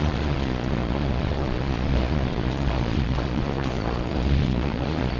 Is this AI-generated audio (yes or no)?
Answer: yes